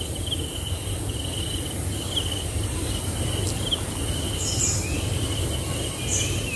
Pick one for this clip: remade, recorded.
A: recorded